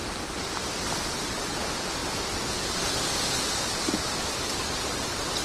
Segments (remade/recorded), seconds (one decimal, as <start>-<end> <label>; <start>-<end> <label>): 0.0-5.4 remade

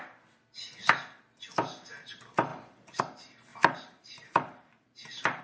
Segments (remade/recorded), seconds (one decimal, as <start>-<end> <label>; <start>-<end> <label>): 0.0-2.5 recorded; 2.5-3.0 remade; 3.0-3.5 recorded; 3.5-5.4 remade

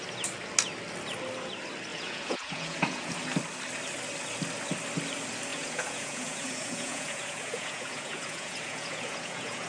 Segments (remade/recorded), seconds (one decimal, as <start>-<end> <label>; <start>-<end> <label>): 0.0-1.9 recorded; 1.9-3.1 remade; 3.1-5.5 recorded; 5.5-9.7 remade

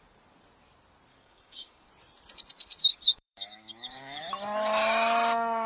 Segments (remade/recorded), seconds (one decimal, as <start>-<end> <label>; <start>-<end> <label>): 0.0-1.1 recorded; 1.1-1.9 remade; 1.9-2.9 recorded; 2.9-4.3 remade; 4.3-5.7 recorded